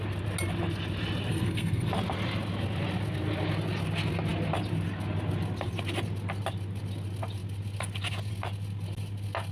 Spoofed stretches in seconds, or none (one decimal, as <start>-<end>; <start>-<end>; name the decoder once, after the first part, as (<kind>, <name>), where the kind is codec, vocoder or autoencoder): 1.3-1.9 (codec, SNAC)